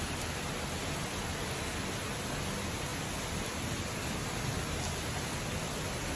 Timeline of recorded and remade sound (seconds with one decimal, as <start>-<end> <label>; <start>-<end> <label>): 0.0-6.2 recorded